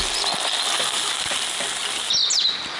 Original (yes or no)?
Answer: yes